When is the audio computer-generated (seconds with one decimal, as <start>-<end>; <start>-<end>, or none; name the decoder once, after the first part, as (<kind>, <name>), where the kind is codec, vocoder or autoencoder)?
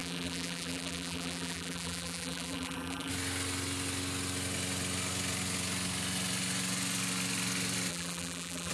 0.0-3.1 (vocoder, BigVGAN v2); 7.9-8.7